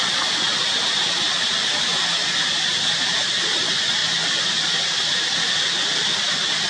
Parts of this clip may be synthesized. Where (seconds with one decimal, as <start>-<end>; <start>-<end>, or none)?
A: none